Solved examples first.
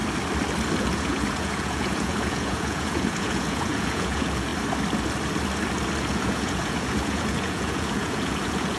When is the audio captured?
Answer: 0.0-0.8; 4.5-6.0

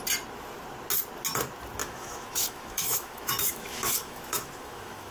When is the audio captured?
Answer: 0.0-1.8

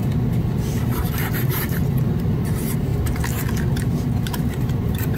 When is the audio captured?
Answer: 0.0-1.4; 2.9-3.8

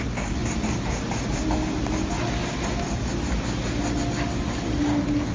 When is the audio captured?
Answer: 0.0-5.3

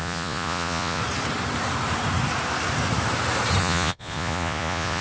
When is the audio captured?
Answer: 1.0-3.6

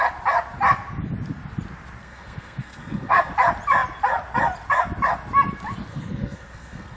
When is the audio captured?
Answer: 0.0-2.0; 3.3-5.9